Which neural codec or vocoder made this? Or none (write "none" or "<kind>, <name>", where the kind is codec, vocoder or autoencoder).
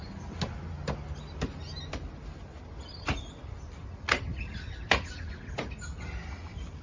none